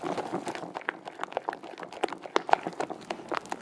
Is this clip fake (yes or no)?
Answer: no